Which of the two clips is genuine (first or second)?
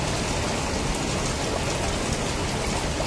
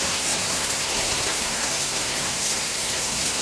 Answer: first